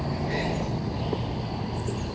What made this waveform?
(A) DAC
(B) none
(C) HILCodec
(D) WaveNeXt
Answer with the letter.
B